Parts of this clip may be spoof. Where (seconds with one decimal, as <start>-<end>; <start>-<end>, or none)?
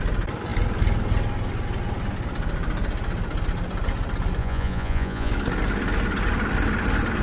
4.4-5.3